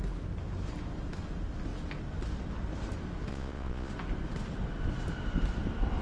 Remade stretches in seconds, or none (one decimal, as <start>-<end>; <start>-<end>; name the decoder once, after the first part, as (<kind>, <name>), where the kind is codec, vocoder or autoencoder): 3.3-3.9 (vocoder, Vocos)